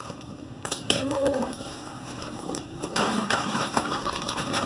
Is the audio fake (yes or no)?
yes